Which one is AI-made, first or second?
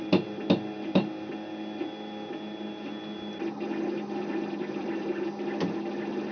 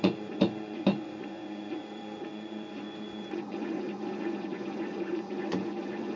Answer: second